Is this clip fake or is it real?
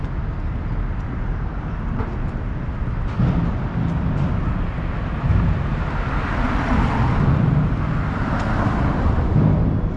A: real